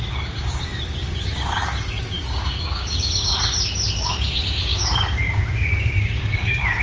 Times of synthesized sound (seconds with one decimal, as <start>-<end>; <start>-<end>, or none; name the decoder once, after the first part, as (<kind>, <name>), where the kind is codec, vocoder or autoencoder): 0.0-3.3 (codec, DAC); 3.9-6.8